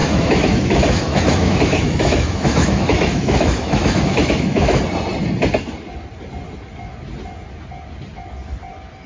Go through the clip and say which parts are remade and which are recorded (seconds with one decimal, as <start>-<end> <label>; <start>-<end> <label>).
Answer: 0.0-4.8 remade; 4.8-9.1 recorded

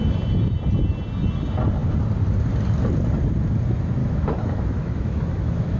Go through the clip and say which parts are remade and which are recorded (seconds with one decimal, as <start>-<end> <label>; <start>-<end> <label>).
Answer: 0.0-4.0 recorded; 4.0-5.8 remade

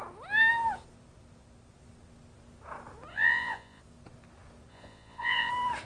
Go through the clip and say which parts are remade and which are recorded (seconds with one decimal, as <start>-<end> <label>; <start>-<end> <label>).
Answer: 0.0-3.1 recorded; 3.1-3.8 remade; 3.8-4.7 recorded; 4.7-5.5 remade; 5.5-5.9 recorded

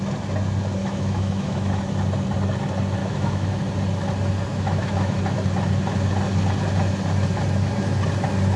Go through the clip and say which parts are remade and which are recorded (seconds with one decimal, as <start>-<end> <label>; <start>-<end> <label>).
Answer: 0.0-0.8 recorded; 0.8-1.8 remade; 1.8-3.0 recorded; 3.0-3.6 remade; 3.6-4.5 recorded; 4.5-5.2 remade; 5.2-8.6 recorded

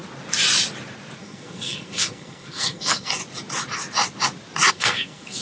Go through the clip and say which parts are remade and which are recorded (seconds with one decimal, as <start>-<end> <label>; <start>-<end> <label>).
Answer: 0.0-1.2 recorded; 1.2-3.2 remade; 3.2-4.7 recorded; 4.7-5.4 remade

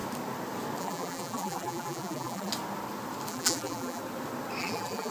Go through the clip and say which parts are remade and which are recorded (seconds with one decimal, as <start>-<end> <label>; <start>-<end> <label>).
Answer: 0.0-0.8 recorded; 0.8-2.5 remade; 2.5-3.3 recorded; 3.3-4.0 remade; 4.0-4.6 recorded; 4.6-5.1 remade